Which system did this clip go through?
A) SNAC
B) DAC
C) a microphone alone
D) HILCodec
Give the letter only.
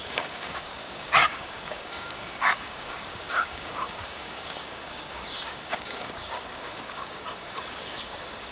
B